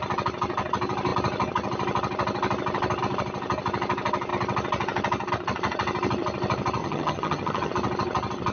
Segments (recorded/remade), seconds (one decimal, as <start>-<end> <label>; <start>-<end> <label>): 0.0-6.8 recorded; 6.8-7.7 remade; 7.7-8.5 recorded

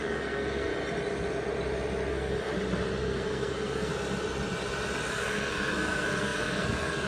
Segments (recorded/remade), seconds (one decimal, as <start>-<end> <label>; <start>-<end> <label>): 0.0-0.7 remade; 0.7-2.1 recorded; 2.1-2.5 remade; 2.5-3.0 recorded; 3.0-3.9 remade; 3.9-5.1 recorded; 5.1-7.1 remade

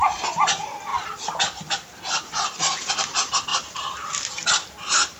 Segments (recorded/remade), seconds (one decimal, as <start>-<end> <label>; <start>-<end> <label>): 0.0-0.9 recorded; 0.9-2.9 remade; 2.9-3.5 recorded; 3.5-5.2 remade

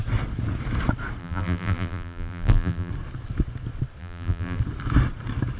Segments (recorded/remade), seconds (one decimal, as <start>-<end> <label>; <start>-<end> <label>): 0.0-1.2 recorded; 1.2-2.9 remade; 2.9-4.0 recorded; 4.0-4.6 remade; 4.6-5.6 recorded

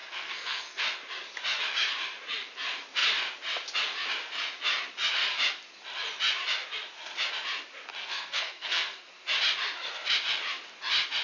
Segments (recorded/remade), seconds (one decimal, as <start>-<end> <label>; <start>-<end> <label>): 0.0-0.8 remade; 0.8-8.0 recorded; 8.0-9.1 remade; 9.1-11.2 recorded